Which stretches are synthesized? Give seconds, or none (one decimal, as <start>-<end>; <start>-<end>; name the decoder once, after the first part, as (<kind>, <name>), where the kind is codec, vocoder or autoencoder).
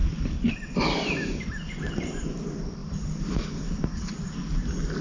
none